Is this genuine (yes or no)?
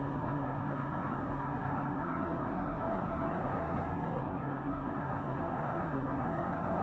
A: no